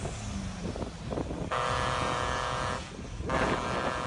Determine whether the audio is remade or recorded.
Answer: recorded